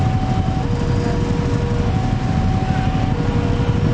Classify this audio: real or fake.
real